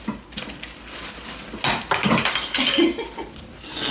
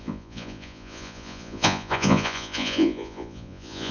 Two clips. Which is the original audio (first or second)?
first